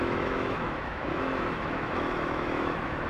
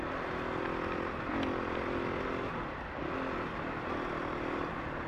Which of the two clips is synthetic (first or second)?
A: first